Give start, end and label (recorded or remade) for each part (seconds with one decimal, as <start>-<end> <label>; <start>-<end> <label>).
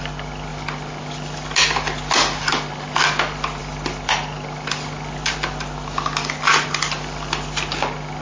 0.0-8.2 recorded